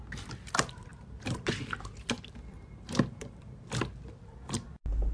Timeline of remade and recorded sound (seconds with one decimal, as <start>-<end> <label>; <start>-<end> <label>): 0.0-5.1 recorded